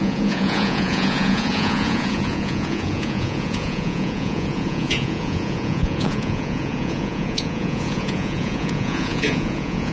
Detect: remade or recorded remade